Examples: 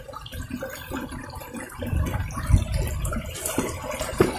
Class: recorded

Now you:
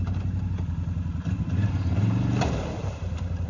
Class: remade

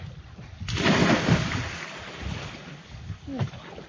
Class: remade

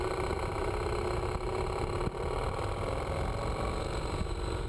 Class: remade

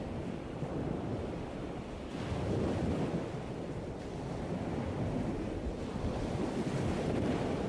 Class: recorded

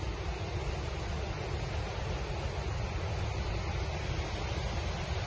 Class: recorded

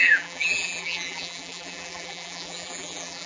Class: remade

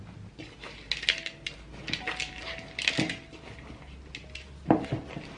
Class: recorded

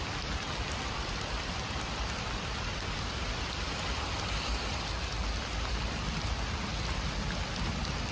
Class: remade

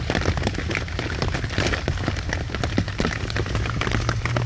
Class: recorded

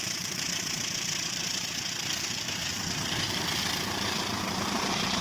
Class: remade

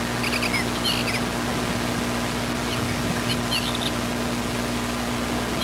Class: recorded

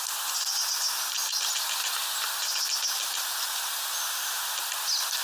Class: recorded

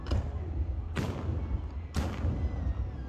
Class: recorded